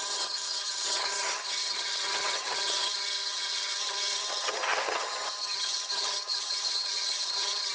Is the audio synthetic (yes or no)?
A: yes